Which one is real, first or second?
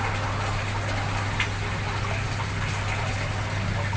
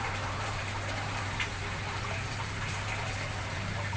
first